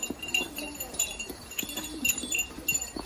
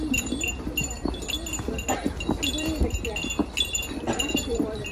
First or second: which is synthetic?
first